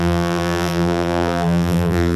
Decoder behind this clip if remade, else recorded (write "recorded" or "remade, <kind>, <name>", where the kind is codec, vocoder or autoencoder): remade, vocoder, BigVGAN v2